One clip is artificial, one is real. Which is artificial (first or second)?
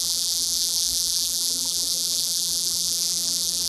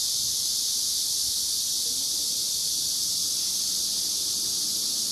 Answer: first